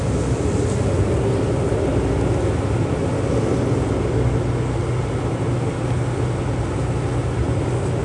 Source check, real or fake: real